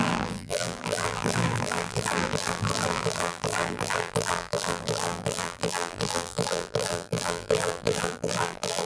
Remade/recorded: remade